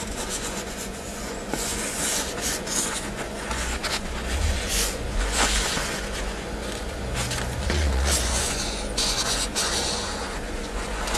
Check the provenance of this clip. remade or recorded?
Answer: remade